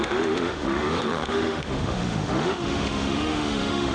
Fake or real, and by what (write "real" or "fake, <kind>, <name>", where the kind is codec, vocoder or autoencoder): fake, autoencoder, DAC-VAE